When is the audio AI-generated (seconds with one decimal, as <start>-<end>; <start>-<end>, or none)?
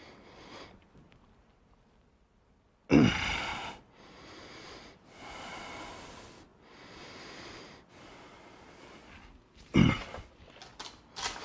none